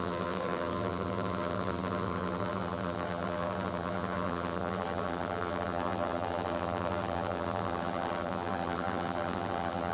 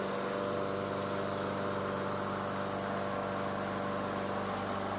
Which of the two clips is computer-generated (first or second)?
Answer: first